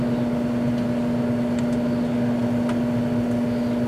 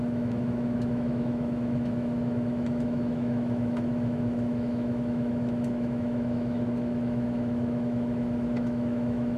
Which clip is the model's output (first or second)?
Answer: second